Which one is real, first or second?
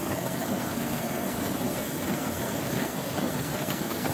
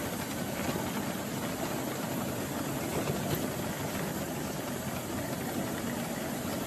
second